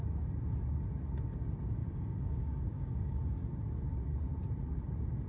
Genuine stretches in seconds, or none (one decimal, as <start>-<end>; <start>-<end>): 0.0-1.8; 3.4-5.3